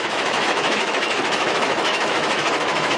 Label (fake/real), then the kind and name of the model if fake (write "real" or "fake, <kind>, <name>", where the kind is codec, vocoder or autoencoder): fake, autoencoder, DAC-VAE